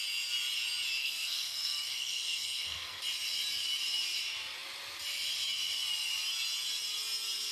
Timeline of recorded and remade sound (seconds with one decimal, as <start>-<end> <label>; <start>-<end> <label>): 0.0-1.0 recorded; 1.0-3.0 remade; 3.0-7.5 recorded